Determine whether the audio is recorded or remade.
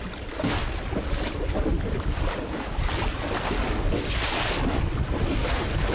recorded